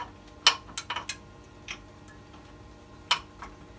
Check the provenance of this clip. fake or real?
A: real